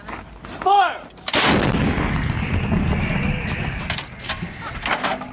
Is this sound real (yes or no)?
yes